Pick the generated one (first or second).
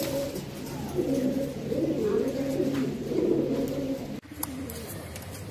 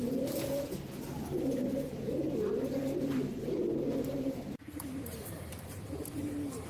second